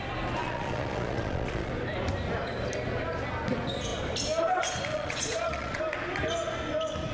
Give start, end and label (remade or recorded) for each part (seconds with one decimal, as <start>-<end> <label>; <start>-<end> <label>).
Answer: 0.0-0.4 recorded; 0.4-1.7 remade; 1.7-4.9 recorded; 4.9-5.8 remade; 5.8-7.1 recorded